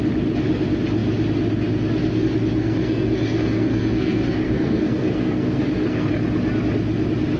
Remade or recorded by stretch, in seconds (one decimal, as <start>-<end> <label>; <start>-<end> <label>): 0.0-2.6 recorded; 2.6-6.1 remade; 6.1-7.4 recorded